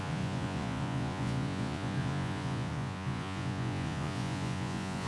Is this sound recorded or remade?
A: remade